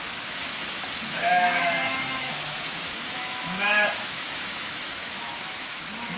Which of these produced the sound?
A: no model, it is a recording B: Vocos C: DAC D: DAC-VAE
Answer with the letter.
D